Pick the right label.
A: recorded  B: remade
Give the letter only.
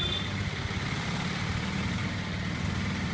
A